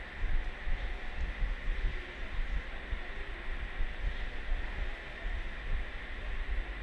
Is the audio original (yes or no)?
yes